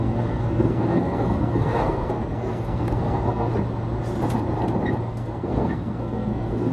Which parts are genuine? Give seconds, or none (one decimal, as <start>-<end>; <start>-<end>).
3.5-5.0